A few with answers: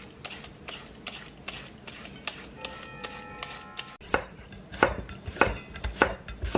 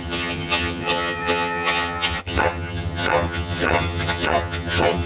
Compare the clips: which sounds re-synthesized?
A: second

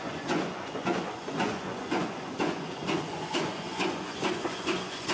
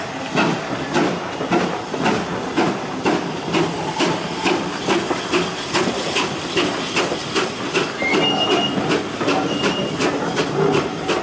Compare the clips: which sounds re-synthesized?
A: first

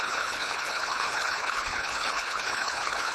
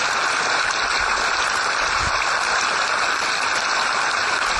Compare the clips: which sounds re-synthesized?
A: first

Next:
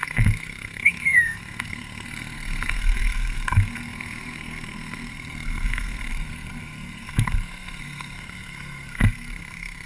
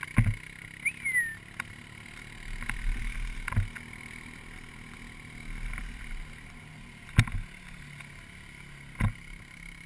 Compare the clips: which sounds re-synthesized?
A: first